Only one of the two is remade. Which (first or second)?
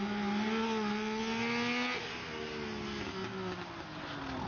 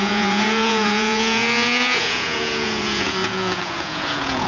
second